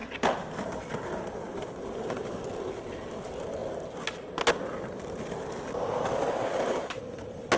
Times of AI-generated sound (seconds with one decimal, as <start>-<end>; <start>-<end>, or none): none